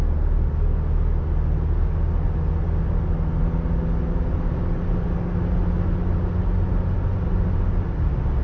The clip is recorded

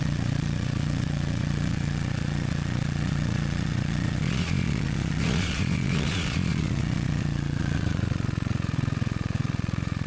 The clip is remade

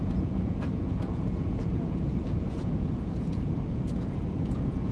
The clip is remade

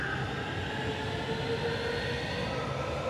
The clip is recorded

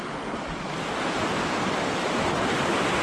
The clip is recorded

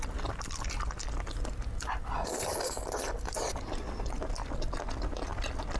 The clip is recorded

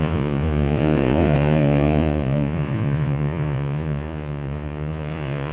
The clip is remade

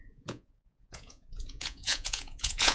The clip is remade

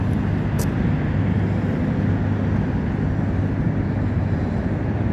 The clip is recorded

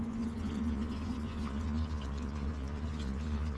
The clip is remade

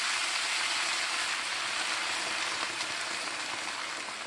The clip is recorded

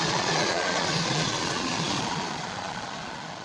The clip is remade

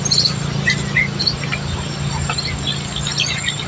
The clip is recorded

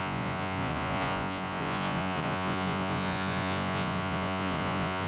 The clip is remade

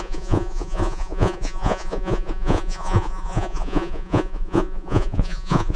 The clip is remade